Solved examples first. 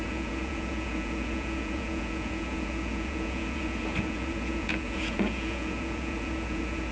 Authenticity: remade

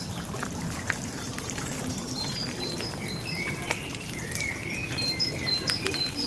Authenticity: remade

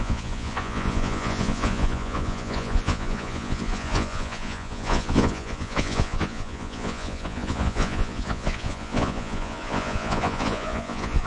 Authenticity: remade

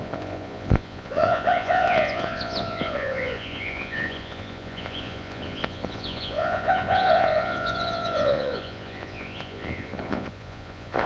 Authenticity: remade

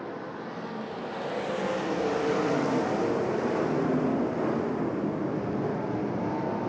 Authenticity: recorded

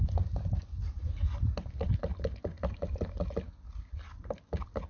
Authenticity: recorded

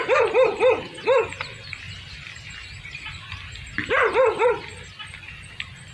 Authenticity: recorded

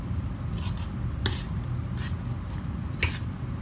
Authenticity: recorded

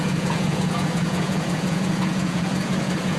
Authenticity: remade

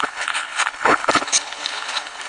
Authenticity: remade